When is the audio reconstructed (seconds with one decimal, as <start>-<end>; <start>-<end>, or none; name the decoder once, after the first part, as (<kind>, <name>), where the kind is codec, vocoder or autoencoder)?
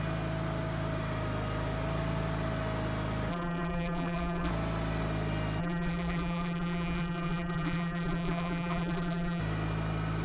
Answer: 3.3-4.5 (vocoder, BigVGAN v2); 5.6-9.4